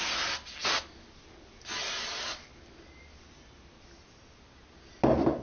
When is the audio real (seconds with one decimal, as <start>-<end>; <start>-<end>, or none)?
0.0-5.4